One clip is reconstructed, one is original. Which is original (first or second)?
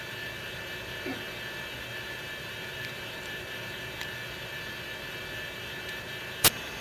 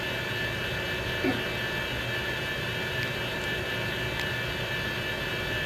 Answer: second